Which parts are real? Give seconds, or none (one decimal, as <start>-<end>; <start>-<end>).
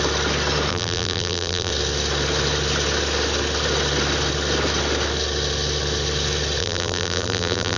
0.0-0.7; 1.7-6.6